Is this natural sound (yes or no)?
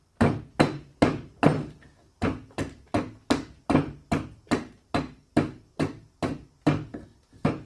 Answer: yes